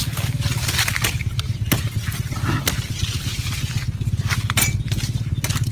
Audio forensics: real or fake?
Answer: real